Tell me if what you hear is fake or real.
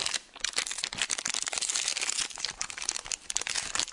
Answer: real